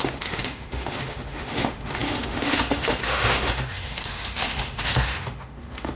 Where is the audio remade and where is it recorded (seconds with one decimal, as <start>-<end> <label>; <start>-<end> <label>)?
0.0-6.0 remade